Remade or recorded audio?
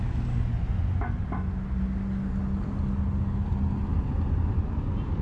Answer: recorded